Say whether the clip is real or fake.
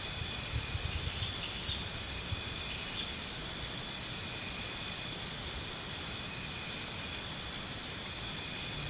real